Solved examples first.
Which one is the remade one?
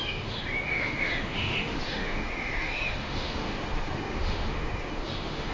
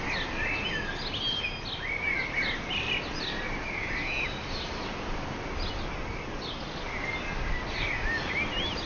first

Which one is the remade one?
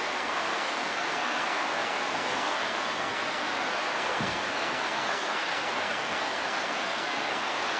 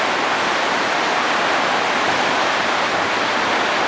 first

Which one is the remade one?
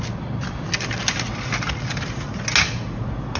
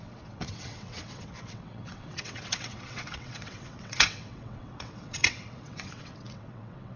second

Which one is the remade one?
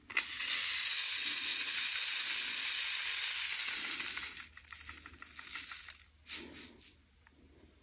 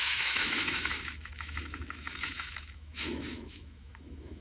second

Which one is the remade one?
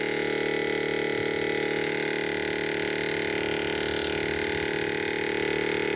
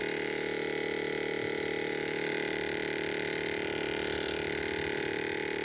second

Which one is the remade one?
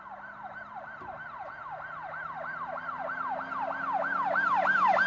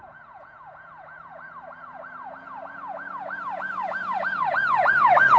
second